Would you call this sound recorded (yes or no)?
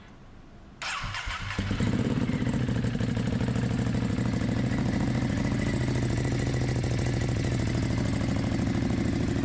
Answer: yes